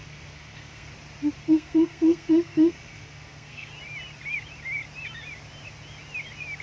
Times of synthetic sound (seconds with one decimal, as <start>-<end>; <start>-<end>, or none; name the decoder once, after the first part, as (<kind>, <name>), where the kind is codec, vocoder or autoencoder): 0.0-0.9 (codec, SNAC); 1.4-3.7